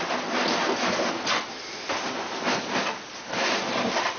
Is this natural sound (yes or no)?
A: yes